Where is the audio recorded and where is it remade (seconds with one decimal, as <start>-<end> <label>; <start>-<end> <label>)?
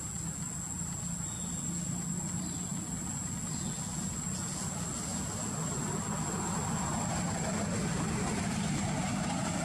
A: 0.0-9.6 recorded